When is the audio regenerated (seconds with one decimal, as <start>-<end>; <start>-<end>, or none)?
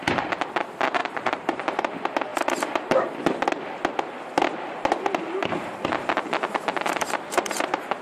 1.0-1.6